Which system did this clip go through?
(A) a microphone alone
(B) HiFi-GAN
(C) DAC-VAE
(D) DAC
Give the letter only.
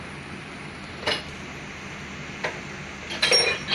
A